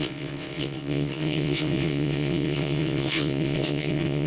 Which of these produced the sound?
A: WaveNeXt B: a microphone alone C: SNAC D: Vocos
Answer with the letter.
A